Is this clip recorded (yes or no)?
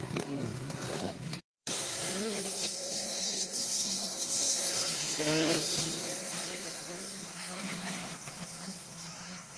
no